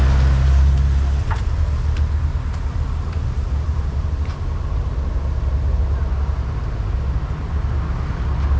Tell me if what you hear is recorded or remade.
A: recorded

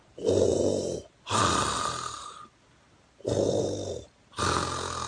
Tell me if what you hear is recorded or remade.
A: recorded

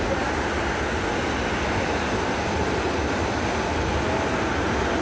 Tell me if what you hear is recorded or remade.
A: recorded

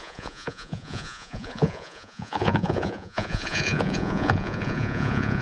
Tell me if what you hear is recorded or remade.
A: remade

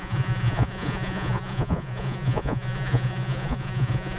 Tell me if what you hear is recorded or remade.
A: remade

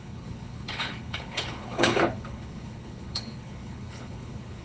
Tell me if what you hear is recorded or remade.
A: remade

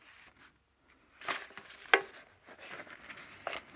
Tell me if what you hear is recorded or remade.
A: recorded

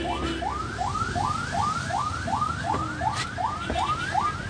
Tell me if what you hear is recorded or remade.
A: recorded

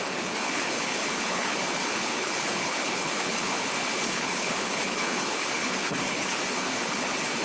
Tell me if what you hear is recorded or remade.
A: remade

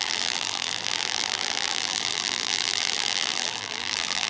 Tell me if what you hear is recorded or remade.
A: remade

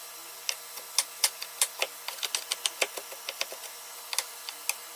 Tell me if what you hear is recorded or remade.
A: recorded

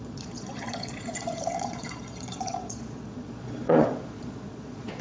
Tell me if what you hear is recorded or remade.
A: remade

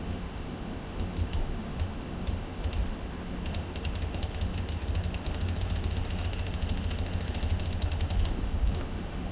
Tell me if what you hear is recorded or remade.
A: remade